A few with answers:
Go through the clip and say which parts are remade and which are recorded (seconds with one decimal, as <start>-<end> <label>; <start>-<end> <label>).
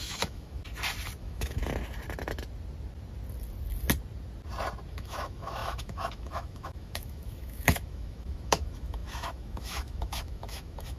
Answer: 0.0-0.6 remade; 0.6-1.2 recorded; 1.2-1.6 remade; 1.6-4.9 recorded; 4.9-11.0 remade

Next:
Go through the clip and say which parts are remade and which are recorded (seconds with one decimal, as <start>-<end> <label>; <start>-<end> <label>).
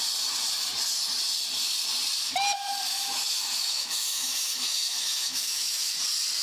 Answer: 0.0-2.9 recorded; 2.9-5.9 remade; 5.9-6.4 recorded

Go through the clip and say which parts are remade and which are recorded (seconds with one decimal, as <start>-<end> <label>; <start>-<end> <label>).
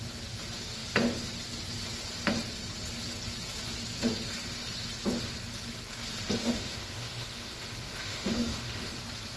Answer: 0.0-6.4 recorded; 6.4-9.0 remade; 9.0-9.4 recorded